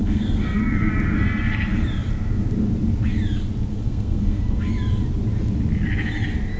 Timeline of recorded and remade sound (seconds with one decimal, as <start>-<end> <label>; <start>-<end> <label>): 0.0-0.9 remade; 0.9-3.7 recorded; 3.7-4.6 remade; 4.6-6.6 recorded

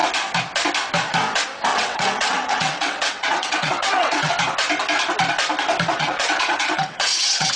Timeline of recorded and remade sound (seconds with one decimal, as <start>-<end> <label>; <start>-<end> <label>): 0.0-1.7 recorded; 1.7-4.3 remade; 4.3-5.9 recorded; 5.9-7.6 remade

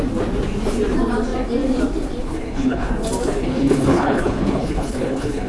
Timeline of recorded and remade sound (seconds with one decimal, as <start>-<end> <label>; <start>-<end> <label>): 0.0-2.2 recorded; 2.2-2.9 remade; 2.9-3.4 recorded; 3.4-5.5 remade

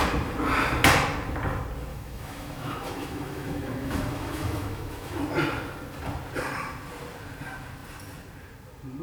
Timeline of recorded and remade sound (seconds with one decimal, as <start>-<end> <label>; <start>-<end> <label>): 0.0-1.9 recorded; 1.9-5.2 remade; 5.2-9.0 recorded